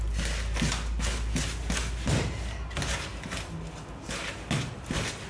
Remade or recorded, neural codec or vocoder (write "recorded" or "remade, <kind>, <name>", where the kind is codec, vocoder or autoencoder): recorded